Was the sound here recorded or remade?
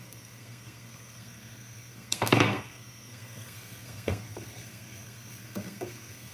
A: remade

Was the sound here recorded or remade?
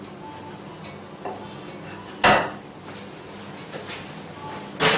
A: recorded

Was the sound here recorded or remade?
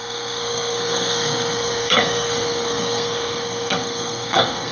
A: remade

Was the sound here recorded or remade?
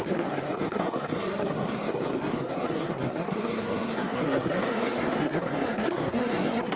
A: remade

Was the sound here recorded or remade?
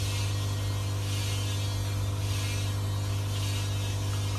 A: recorded